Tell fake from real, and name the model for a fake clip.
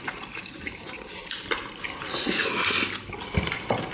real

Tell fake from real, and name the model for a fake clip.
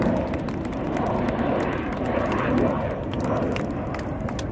real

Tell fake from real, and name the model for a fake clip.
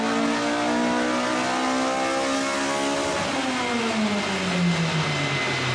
real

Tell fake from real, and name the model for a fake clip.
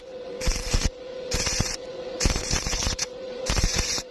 fake, vocoder, Vocos